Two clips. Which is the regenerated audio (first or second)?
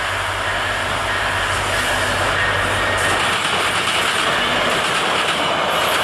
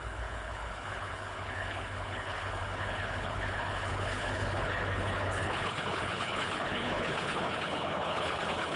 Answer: second